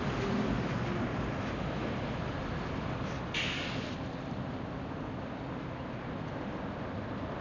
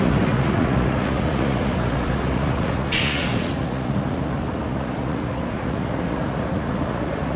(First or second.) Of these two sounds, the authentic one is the first